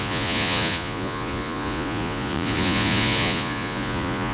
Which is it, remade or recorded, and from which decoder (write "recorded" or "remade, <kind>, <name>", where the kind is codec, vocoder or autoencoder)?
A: remade, vocoder, Vocos